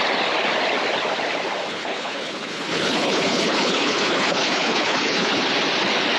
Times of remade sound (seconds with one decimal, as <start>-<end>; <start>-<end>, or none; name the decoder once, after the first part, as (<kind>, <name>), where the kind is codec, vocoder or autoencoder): 1.7-5.4 (codec, HILCodec)